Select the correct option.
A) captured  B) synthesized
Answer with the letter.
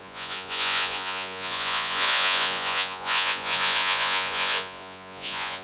B